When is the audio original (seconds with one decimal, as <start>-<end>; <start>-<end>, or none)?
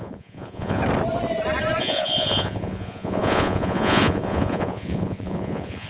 0.8-1.8